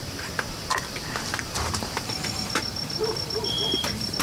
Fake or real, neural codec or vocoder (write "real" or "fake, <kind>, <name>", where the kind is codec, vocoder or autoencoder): fake, vocoder, BigVGAN v2